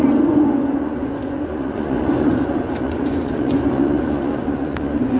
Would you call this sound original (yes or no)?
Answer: no